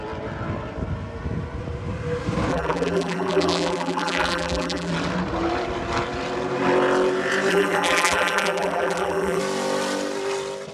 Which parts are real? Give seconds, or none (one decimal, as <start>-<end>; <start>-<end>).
0.0-2.5; 4.9-7.5; 9.4-10.7